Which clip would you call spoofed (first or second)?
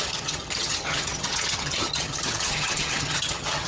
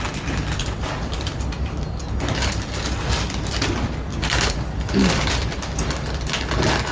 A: first